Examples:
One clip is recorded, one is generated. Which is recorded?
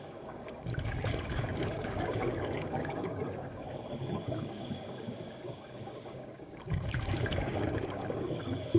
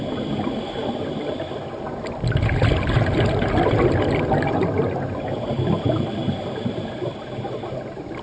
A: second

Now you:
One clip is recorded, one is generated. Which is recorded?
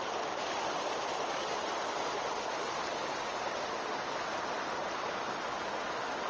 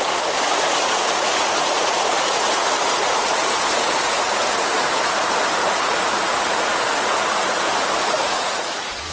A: first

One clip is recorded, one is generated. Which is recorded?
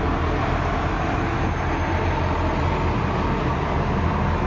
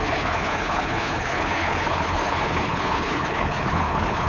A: first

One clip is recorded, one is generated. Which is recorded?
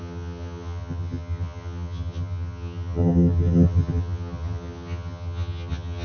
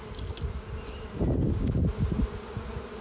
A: second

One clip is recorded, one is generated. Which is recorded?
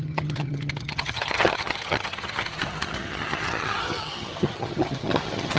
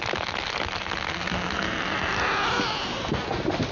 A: second